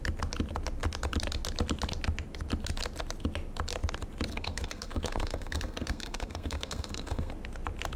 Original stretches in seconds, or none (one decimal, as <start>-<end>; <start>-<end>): 0.0-4.3; 7.3-8.0